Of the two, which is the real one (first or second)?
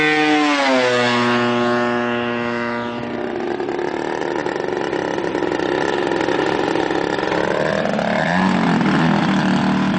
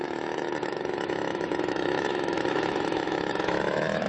first